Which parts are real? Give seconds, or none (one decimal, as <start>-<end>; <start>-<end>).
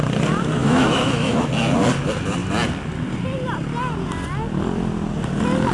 0.0-0.6; 1.5-5.7